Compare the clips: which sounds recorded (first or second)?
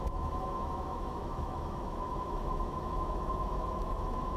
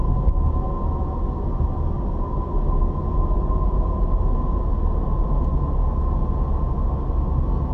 second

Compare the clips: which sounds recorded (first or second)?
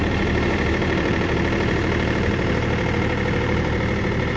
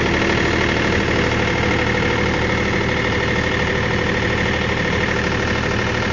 second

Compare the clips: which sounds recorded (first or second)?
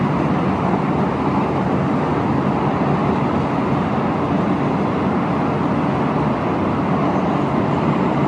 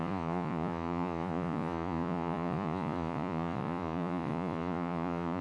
first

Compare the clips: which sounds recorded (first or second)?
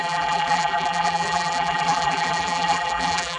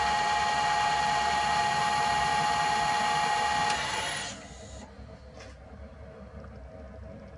second